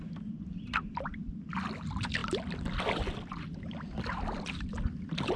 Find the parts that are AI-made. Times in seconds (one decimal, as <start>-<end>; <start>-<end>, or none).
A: 2.2-4.4